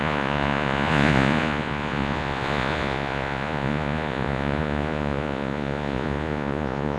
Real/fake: fake